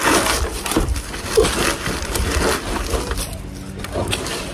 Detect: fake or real real